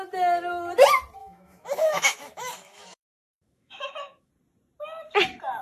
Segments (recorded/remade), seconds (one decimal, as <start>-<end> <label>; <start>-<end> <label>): 0.0-1.2 recorded; 1.2-4.3 remade; 4.3-5.6 recorded